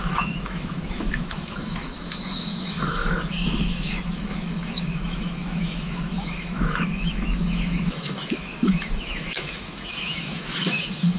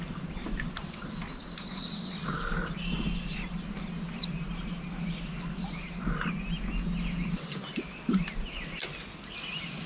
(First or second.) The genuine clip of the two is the second